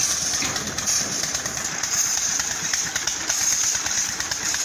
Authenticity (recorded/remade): remade